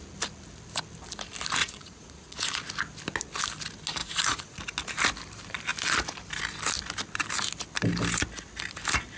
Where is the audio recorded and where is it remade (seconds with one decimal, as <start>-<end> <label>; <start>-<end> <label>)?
0.0-1.6 recorded; 1.6-2.6 remade; 2.6-4.0 recorded; 4.0-4.6 remade; 4.6-9.2 recorded